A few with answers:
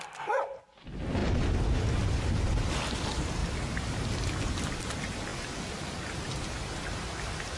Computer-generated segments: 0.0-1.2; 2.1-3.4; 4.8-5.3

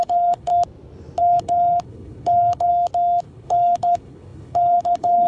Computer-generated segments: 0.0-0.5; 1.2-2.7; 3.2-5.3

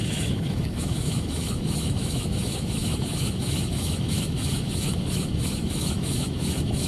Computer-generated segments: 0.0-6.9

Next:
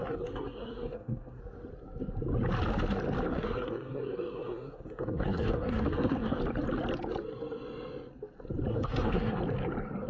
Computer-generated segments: 0.0-1.4; 3.3-6.4; 8.7-9.4

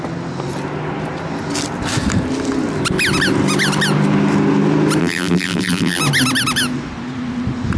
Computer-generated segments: 5.0-6.0

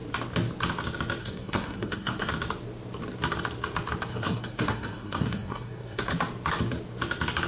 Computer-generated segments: 1.2-2.3; 4.1-6.1

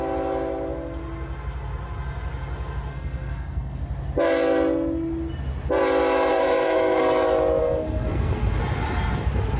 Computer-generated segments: 2.9-3.8; 6.3-7.0; 7.6-8.6